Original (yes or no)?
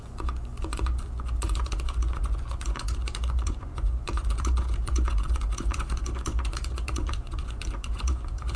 no